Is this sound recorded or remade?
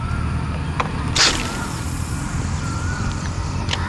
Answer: recorded